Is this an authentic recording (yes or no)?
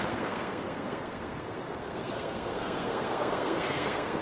no